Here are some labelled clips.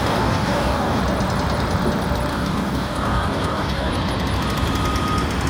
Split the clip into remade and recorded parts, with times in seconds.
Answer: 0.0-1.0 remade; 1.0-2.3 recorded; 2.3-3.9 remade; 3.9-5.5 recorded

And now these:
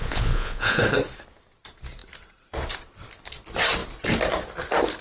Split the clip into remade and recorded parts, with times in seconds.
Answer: 0.0-0.8 remade; 0.8-5.0 recorded

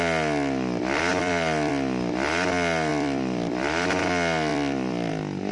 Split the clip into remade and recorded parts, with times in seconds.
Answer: 0.0-1.1 recorded; 1.1-1.7 remade; 1.7-2.9 recorded; 2.9-4.0 remade; 4.0-4.5 recorded; 4.5-5.1 remade; 5.1-5.5 recorded

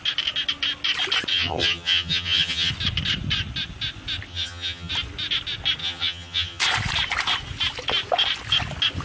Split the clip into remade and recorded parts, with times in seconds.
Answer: 0.0-1.3 recorded; 1.3-2.7 remade; 2.7-4.3 recorded; 4.3-4.9 remade; 4.9-5.8 recorded; 5.8-6.6 remade; 6.6-9.0 recorded

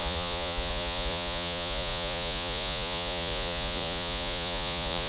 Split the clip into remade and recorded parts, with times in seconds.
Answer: 0.0-5.1 remade

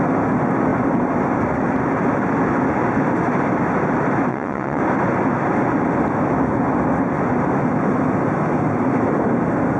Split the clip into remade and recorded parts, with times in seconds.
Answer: 0.0-4.3 recorded; 4.3-4.8 remade; 4.8-9.8 recorded

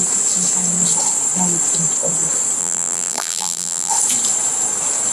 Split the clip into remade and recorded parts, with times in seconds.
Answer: 0.0-2.6 recorded; 2.6-3.9 remade; 3.9-5.1 recorded

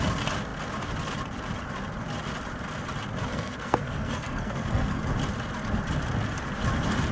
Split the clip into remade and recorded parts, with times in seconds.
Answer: 0.0-3.3 recorded; 3.3-5.0 remade; 5.0-7.1 recorded